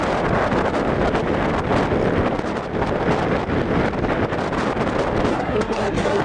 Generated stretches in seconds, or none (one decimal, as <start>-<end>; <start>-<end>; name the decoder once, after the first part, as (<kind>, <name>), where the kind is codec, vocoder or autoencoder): 5.3-6.2 (codec, SNAC)